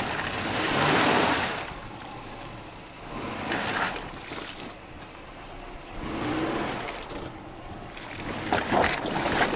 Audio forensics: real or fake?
fake